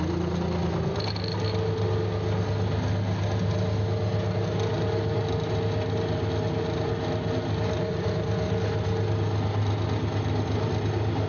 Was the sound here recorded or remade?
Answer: recorded